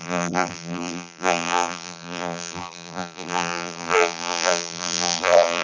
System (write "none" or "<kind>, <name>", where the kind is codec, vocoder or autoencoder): vocoder, BigVGAN v2